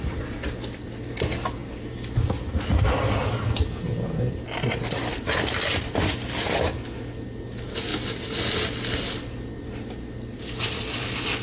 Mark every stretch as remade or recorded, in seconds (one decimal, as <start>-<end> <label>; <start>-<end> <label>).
0.0-11.4 recorded